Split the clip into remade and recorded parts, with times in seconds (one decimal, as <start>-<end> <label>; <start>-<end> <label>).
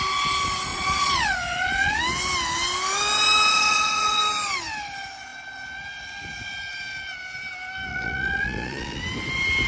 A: 0.0-0.7 recorded; 0.7-2.0 remade; 2.0-3.5 recorded; 3.5-4.2 remade; 4.2-7.9 recorded; 7.9-9.0 remade; 9.0-9.7 recorded